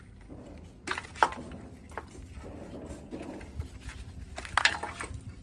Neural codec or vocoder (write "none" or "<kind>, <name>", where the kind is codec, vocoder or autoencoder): none